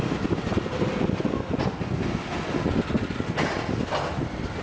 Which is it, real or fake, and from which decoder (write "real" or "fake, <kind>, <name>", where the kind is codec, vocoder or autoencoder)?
real